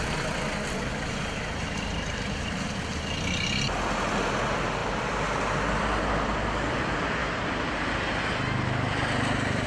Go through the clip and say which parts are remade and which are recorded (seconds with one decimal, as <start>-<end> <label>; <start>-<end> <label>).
0.0-0.9 recorded; 0.9-2.6 remade; 2.6-4.8 recorded; 4.8-6.7 remade; 6.7-7.2 recorded; 7.2-8.2 remade; 8.2-9.7 recorded